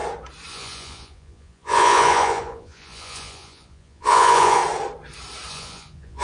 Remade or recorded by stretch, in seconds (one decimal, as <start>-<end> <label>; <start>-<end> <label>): 0.0-0.5 recorded; 0.5-4.6 remade; 4.6-5.5 recorded; 5.5-6.2 remade

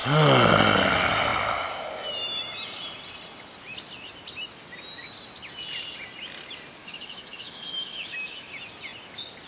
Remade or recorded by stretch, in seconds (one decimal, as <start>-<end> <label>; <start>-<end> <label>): 0.0-6.8 recorded; 6.8-8.5 remade; 8.5-9.5 recorded

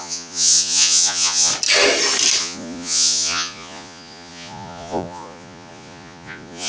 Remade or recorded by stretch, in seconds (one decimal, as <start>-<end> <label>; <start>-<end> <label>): 0.0-1.5 remade; 1.5-2.4 recorded; 2.4-6.7 remade

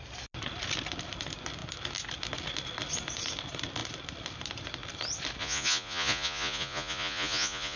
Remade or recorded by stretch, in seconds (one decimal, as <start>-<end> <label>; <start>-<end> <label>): 0.0-5.4 recorded; 5.4-7.8 remade

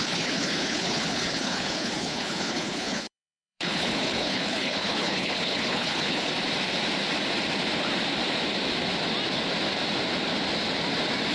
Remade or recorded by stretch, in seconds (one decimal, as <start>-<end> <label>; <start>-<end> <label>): 0.0-6.3 remade; 6.3-11.3 recorded